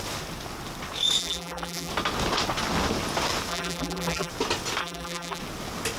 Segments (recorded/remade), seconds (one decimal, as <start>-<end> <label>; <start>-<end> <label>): 0.0-1.2 recorded; 1.2-1.9 remade; 1.9-3.5 recorded; 3.5-4.3 remade; 4.3-4.8 recorded; 4.8-5.4 remade; 5.4-6.0 recorded